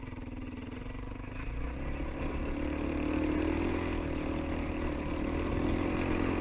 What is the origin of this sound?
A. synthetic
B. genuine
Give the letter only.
B